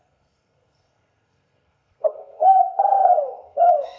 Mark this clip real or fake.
fake